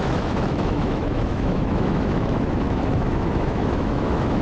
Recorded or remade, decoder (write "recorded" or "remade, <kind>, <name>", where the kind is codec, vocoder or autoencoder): remade, autoencoder, DAC-VAE